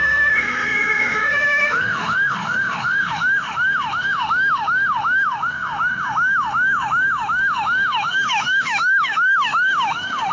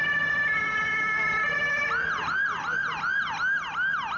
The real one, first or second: second